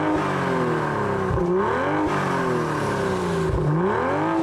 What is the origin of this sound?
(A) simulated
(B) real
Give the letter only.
B